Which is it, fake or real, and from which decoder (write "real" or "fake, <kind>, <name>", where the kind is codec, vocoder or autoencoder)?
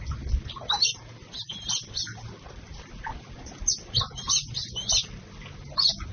real